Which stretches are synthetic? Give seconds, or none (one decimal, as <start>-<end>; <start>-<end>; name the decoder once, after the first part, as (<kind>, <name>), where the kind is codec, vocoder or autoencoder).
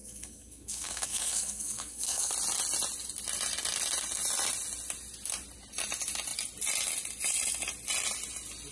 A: 0.0-2.3 (codec, SNAC)